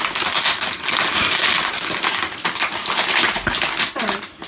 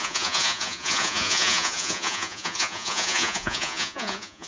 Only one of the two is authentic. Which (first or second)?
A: first